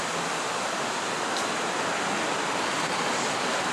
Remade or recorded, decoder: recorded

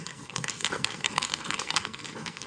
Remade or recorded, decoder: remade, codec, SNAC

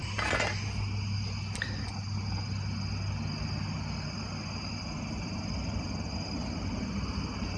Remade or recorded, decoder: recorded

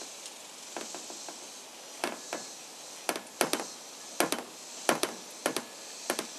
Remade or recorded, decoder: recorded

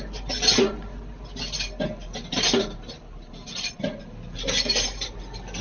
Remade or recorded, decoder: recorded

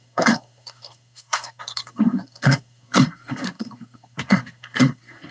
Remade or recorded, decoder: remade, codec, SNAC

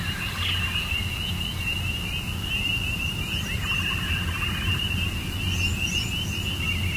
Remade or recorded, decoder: recorded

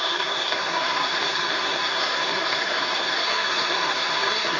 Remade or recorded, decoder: remade, codec, SNAC